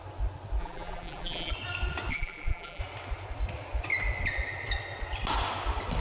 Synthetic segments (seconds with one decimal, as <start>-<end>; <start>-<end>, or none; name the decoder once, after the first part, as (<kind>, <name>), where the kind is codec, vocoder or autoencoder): 0.6-1.5 (vocoder, BigVGAN v2); 2.1-2.8